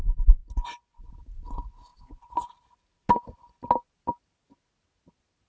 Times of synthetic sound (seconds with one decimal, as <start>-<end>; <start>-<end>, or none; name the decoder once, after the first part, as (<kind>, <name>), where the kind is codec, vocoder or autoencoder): none